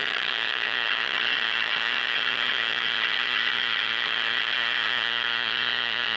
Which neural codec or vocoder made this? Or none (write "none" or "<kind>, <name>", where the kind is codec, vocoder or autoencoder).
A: vocoder, HiFi-GAN